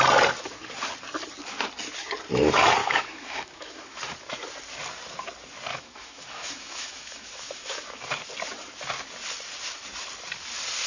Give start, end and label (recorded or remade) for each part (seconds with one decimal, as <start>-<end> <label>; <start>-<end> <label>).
0.0-2.8 recorded; 2.8-4.0 remade; 4.0-5.7 recorded; 5.7-8.0 remade; 8.0-10.9 recorded